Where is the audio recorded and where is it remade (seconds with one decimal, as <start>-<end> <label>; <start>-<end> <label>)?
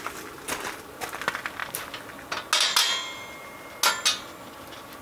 0.0-5.0 recorded